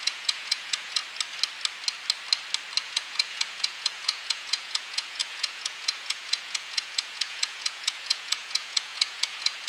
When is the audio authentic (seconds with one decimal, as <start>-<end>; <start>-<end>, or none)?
1.0-2.8

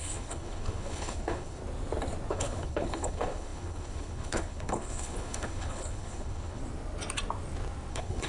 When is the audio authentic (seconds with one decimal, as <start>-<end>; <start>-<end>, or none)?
1.6-2.3; 6.6-7.9

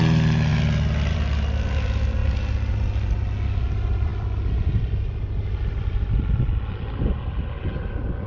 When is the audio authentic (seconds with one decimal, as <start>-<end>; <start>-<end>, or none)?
0.5-1.1; 2.2-3.5

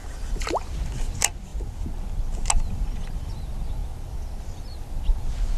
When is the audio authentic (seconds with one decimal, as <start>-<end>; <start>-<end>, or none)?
0.6-5.6

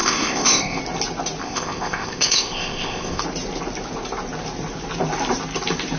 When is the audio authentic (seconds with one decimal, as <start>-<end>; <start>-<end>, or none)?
0.8-1.4; 3.2-6.0